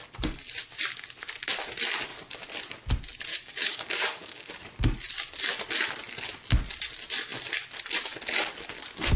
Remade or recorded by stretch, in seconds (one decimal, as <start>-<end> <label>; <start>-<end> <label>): 0.0-3.3 recorded; 3.3-4.5 remade; 4.5-9.2 recorded